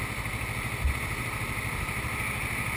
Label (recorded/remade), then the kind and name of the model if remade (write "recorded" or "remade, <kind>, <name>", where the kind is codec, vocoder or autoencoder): recorded